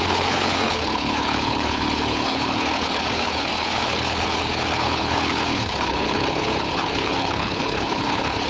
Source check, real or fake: fake